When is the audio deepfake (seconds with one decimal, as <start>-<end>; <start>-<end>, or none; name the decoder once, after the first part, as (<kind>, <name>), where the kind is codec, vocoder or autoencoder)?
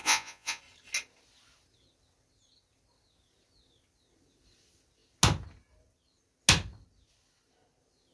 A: 0.0-0.6 (vocoder, Vocos)